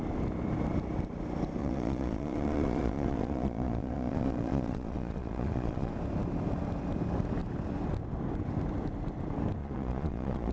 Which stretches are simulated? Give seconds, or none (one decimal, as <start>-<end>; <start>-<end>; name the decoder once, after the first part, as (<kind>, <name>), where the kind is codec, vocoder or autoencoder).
1.6-5.9 (vocoder, Vocos); 9.6-10.5